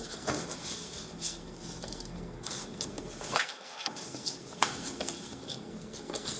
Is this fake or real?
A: fake